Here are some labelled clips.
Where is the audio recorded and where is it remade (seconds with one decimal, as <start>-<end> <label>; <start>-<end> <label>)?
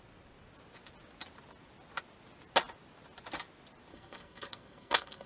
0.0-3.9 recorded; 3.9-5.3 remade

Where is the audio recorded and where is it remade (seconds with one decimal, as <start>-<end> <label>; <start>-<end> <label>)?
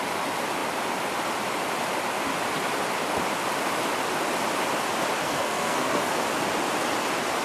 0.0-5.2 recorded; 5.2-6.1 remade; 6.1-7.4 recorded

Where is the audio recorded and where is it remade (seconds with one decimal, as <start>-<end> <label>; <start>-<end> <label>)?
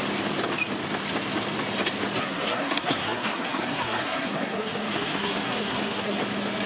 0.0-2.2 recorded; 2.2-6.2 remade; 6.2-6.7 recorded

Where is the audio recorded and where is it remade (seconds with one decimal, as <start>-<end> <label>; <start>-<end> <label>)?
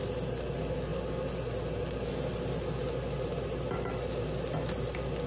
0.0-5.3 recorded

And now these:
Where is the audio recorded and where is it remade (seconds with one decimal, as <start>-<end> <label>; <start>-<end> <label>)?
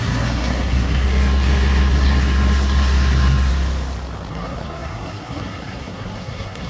0.0-3.5 remade; 3.5-4.3 recorded; 4.3-6.7 remade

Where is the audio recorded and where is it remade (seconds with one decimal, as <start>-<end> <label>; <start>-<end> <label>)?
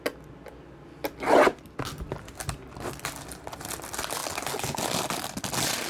0.0-5.9 recorded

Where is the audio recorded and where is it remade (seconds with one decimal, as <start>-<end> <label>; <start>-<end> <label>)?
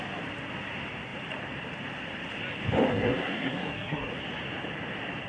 0.0-2.9 recorded; 2.9-4.1 remade; 4.1-5.3 recorded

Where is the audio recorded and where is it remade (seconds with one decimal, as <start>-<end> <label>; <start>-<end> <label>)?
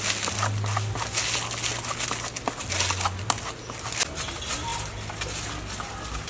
0.0-6.3 recorded